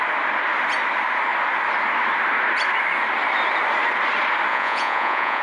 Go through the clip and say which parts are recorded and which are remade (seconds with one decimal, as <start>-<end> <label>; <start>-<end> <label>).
0.0-4.5 recorded; 4.5-5.4 remade